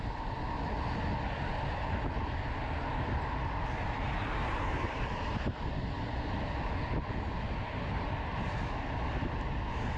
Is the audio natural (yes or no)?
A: yes